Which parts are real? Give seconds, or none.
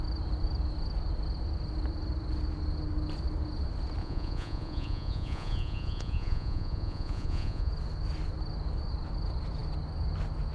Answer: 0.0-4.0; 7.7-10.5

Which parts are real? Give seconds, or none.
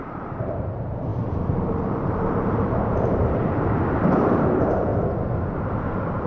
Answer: 4.9-5.4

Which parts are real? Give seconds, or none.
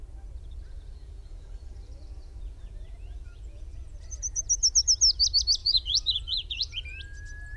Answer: 0.0-0.4; 4.4-5.6; 7.0-7.6